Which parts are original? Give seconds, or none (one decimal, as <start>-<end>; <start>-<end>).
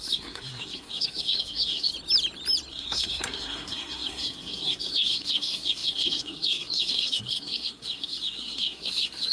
1.9-2.7